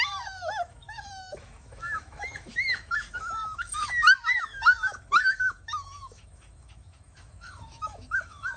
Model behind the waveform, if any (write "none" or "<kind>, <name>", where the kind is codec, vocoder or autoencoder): autoencoder, DAC-VAE